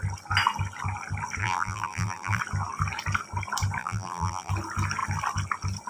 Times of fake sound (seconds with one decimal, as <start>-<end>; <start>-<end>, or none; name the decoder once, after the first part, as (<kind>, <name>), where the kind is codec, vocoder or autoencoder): 1.4-2.4 (vocoder, BigVGAN v2); 3.8-4.5